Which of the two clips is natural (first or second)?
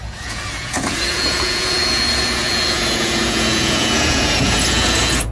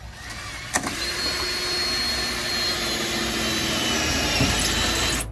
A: second